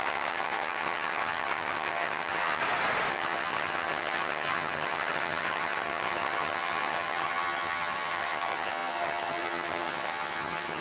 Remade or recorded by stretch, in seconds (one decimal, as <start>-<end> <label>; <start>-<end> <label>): 0.0-2.6 remade; 2.6-3.1 recorded; 3.1-10.8 remade